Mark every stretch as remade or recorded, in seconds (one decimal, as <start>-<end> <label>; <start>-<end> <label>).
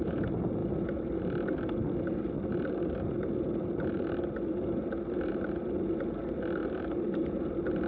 0.0-7.9 recorded